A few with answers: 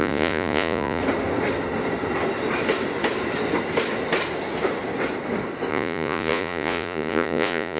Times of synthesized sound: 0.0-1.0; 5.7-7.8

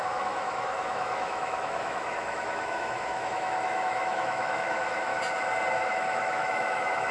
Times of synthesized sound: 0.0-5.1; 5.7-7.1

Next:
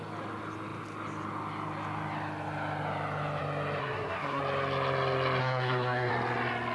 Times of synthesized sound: 3.8-4.4; 5.4-6.1

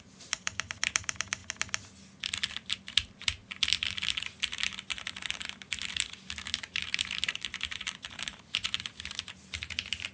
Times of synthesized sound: 0.0-1.4; 2.5-3.4; 6.6-10.1

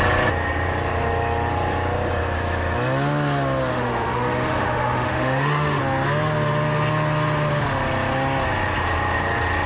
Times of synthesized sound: 3.7-5.8

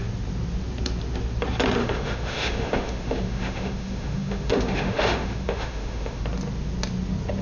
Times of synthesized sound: 1.8-6.2